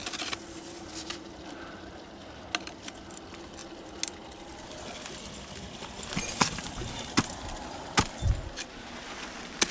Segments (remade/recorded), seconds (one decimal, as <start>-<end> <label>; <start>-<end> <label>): 0.0-9.7 recorded